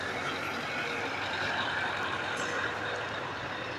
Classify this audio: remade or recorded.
recorded